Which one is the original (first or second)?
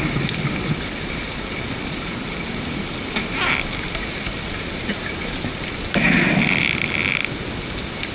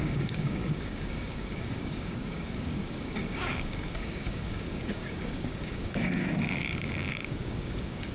first